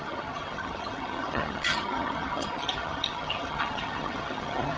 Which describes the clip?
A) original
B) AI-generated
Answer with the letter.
B